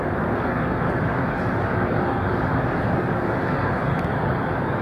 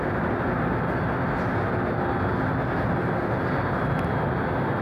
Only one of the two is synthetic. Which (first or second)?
first